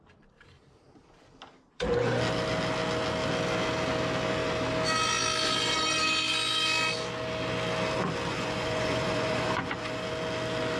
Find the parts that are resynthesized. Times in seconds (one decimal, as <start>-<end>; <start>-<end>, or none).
8.3-10.1